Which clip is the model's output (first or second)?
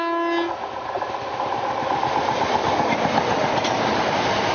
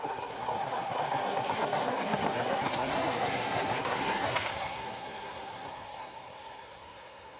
second